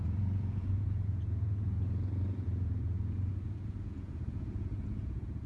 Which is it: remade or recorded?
remade